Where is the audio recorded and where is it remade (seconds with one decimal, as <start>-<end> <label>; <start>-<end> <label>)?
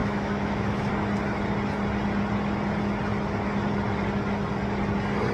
0.0-0.9 remade; 0.9-5.3 recorded